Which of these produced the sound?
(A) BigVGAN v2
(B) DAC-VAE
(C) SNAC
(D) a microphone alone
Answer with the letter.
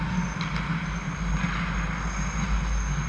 D